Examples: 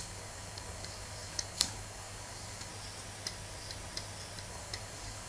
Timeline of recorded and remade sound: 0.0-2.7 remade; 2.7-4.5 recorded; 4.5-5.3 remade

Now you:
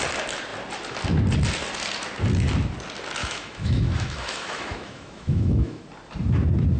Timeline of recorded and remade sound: 0.0-3.2 recorded; 3.2-5.8 remade; 5.8-6.8 recorded

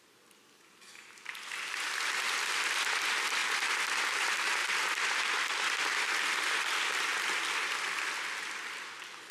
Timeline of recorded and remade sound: 0.0-3.4 recorded; 3.4-4.1 remade; 4.1-4.6 recorded; 4.6-5.4 remade; 5.4-9.3 recorded

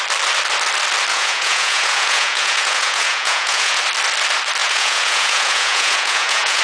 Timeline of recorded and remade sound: 0.0-1.1 recorded; 1.1-3.8 remade; 3.8-4.6 recorded; 4.6-6.6 remade